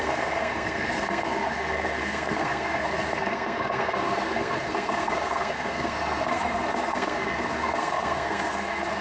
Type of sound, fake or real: fake